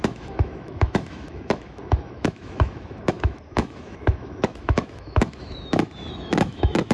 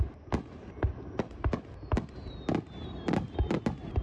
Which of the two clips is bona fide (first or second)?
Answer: second